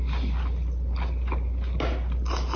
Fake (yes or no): no